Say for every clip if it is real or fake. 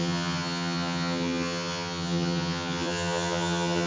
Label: fake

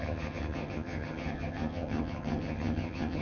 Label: fake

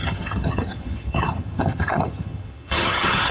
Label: fake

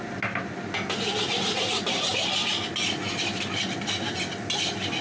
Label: real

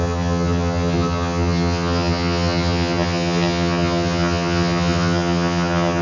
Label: fake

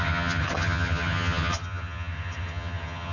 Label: fake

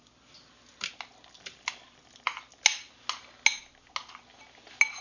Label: real